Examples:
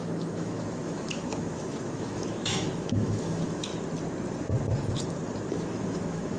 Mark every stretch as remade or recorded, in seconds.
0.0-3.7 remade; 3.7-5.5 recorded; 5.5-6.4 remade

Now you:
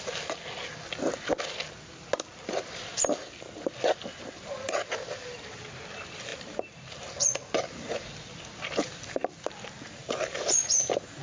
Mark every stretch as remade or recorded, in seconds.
0.0-11.2 recorded

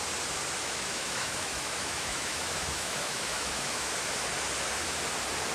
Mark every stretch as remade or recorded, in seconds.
0.0-0.6 recorded; 0.6-3.9 remade; 3.9-5.5 recorded

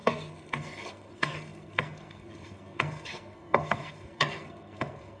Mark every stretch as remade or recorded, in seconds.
0.0-5.2 remade

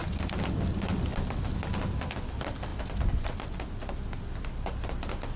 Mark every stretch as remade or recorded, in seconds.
0.0-5.4 recorded

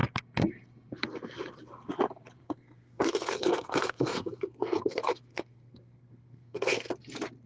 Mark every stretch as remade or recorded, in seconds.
0.0-2.4 recorded; 2.4-6.9 remade; 6.9-7.5 recorded